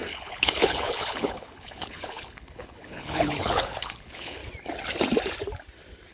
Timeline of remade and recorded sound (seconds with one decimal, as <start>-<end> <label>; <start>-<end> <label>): 0.0-4.4 remade; 4.4-6.1 recorded